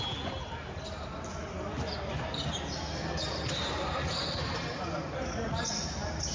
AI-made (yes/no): no